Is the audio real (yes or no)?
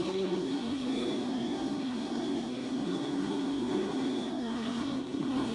no